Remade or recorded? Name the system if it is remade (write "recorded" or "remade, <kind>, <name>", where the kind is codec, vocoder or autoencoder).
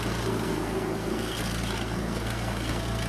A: remade, codec, SNAC